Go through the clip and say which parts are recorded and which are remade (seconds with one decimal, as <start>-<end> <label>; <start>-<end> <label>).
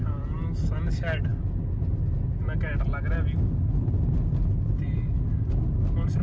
0.0-6.2 recorded